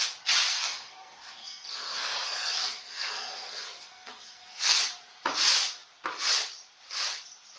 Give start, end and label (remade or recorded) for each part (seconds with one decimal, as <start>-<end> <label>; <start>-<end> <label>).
0.0-0.5 recorded; 0.5-4.8 remade; 4.8-7.6 recorded